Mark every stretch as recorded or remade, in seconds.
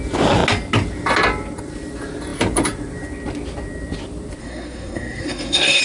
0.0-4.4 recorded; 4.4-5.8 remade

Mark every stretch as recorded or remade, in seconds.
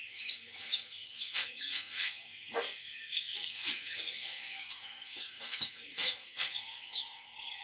0.0-7.6 remade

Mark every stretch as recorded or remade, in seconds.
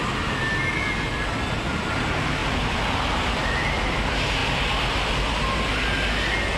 0.0-6.6 recorded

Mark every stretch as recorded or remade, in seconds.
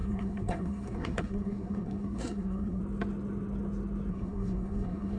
0.0-2.8 remade; 2.8-4.1 recorded; 4.1-5.2 remade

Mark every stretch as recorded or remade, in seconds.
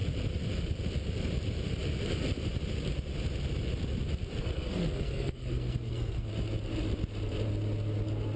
0.0-4.4 recorded; 4.4-6.3 remade; 6.3-8.4 recorded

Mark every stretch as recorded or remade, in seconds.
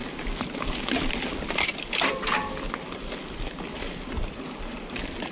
0.0-5.3 recorded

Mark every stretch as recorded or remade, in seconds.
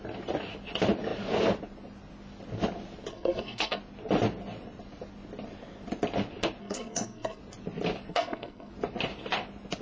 0.0-3.1 recorded; 3.1-3.8 remade; 3.8-6.6 recorded; 6.6-7.4 remade; 7.4-8.1 recorded; 8.1-8.7 remade; 8.7-9.8 recorded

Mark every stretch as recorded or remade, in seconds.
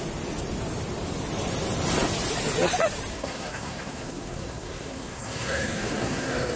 0.0-3.1 recorded; 3.1-6.6 remade